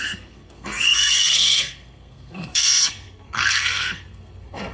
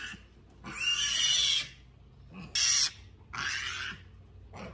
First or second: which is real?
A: second